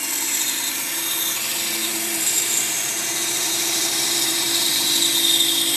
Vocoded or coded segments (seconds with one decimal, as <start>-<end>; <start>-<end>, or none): 1.8-4.9